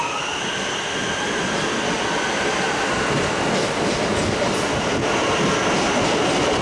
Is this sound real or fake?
real